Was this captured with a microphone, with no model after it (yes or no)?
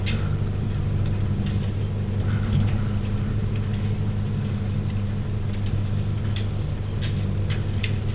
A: yes